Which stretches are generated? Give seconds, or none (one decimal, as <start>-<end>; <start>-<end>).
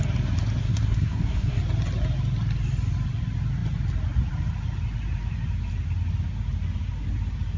0.6-1.6